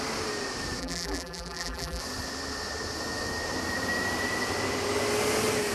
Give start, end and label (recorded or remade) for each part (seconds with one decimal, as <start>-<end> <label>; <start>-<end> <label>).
0.0-0.8 recorded; 0.8-2.0 remade; 2.0-5.7 recorded